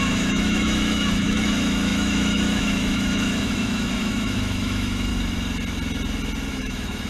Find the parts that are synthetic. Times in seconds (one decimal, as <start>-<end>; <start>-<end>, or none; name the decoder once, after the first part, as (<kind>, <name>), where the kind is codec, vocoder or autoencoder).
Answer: 0.0-5.1 (autoencoder, DAC-VAE); 6.5-7.1